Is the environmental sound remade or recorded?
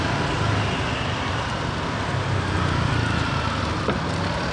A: recorded